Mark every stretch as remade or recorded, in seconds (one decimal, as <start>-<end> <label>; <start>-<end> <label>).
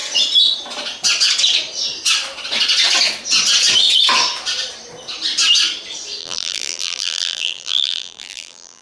0.0-6.2 recorded; 6.2-8.8 remade